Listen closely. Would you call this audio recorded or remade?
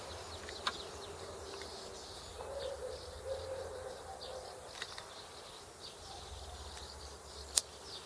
recorded